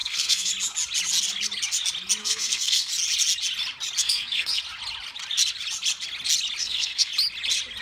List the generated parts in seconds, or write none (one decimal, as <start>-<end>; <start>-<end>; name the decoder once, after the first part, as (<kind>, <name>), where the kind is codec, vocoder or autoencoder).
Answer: 0.0-0.5 (codec, SNAC); 2.2-2.9; 4.0-4.6; 6.6-7.1